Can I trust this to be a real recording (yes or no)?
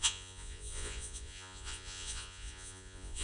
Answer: no